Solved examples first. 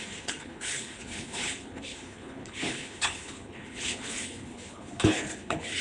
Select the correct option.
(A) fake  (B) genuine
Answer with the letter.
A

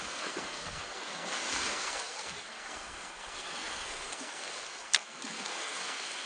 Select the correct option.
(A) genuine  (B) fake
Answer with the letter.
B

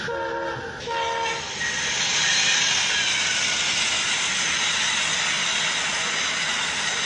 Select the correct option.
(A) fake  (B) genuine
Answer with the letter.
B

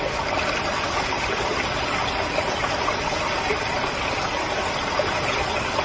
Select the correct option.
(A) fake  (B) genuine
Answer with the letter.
B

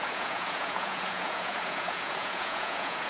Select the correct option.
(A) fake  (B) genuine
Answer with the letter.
A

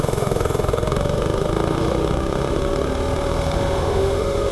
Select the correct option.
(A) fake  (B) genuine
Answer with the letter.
A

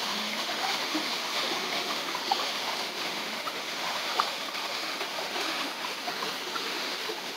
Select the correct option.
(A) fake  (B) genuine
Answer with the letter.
A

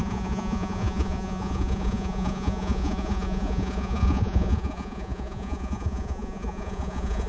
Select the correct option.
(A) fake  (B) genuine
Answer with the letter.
A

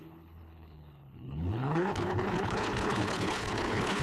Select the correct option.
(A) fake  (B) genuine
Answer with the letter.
A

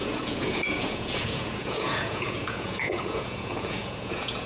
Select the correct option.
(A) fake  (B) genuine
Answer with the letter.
A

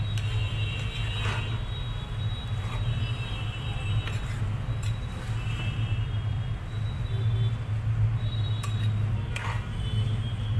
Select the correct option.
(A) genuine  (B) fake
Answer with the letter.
A